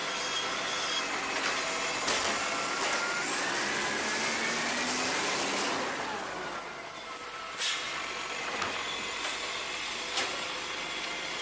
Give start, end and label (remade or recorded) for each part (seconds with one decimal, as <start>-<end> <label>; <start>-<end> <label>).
0.0-11.4 recorded